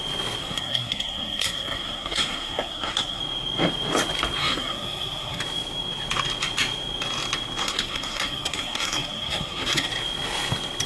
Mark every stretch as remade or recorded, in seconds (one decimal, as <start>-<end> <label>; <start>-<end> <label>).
0.0-0.4 recorded; 0.4-3.2 remade; 3.2-4.4 recorded; 4.4-5.4 remade; 5.4-7.6 recorded; 7.6-9.9 remade; 9.9-10.9 recorded